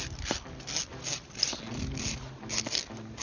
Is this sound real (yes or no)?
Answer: yes